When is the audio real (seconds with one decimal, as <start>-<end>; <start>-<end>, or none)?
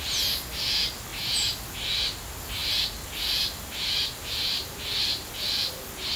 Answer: 0.0-6.2